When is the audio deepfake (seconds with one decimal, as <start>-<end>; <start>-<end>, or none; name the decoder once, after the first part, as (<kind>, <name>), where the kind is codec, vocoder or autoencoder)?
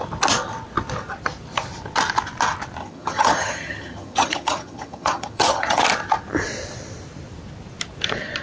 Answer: 2.8-5.8 (vocoder, HiFi-GAN)